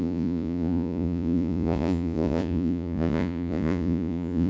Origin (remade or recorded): remade